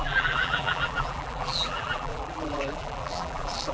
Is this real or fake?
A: fake